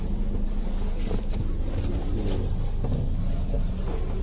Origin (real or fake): real